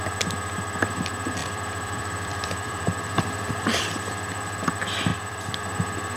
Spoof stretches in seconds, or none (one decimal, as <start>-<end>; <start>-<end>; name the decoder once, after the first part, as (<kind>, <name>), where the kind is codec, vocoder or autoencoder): 1.4-3.8 (vocoder, BigVGAN v2); 5.1-5.6